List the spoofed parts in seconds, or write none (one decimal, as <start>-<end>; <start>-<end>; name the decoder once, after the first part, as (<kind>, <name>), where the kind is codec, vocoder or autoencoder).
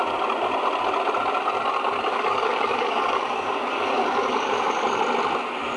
2.1-5.0 (codec, DAC)